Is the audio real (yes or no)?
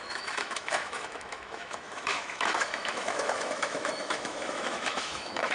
no